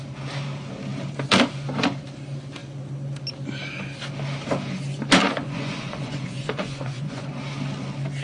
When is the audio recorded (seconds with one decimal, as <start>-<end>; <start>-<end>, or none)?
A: 0.0-5.2; 7.3-8.2